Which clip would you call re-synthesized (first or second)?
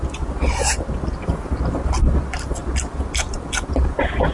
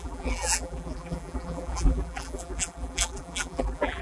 second